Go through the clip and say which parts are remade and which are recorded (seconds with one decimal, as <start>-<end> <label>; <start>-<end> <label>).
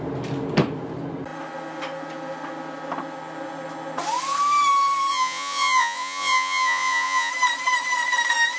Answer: 0.0-5.1 recorded; 5.1-7.3 remade; 7.3-8.6 recorded